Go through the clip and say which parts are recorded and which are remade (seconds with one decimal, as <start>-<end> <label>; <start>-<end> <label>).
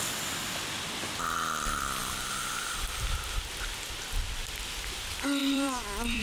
0.0-5.4 recorded; 5.4-6.2 remade